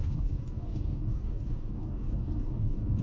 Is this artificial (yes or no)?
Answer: yes